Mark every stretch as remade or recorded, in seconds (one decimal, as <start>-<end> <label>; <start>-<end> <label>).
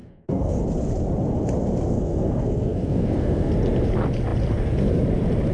0.0-0.6 remade; 0.6-1.9 recorded; 1.9-3.5 remade; 3.5-5.5 recorded